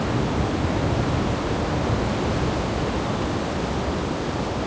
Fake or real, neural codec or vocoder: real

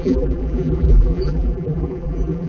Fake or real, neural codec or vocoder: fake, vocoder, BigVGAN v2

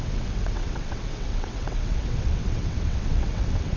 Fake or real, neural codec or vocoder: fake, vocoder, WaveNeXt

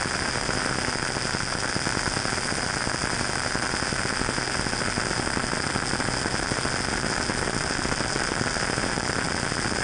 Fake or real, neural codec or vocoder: real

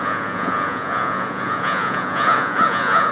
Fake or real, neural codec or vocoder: fake, vocoder, Vocos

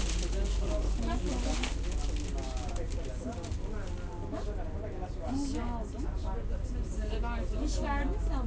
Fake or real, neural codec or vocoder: real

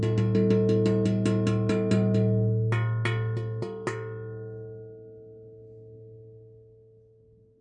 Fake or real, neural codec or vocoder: real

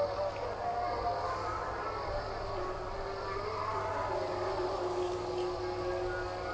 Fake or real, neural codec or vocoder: real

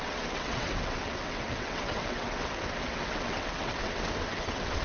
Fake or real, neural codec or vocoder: fake, vocoder, WaveNeXt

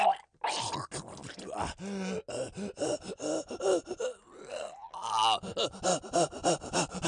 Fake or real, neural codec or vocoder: real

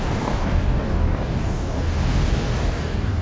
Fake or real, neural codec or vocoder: fake, codec, DAC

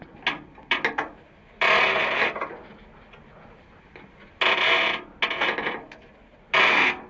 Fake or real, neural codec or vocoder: real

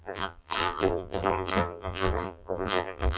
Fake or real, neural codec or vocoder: fake, vocoder, BigVGAN v2